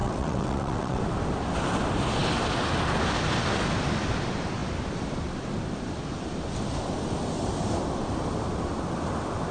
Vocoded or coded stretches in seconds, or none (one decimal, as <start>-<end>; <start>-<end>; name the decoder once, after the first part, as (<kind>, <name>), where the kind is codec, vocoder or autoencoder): 0.0-1.0 (vocoder, WaveNeXt)